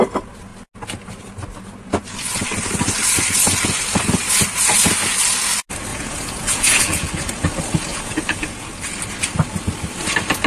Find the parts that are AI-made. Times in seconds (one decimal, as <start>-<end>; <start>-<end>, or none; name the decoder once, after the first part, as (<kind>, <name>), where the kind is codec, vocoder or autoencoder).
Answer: 5.9-7.1 (vocoder, Vocos); 7.9-8.7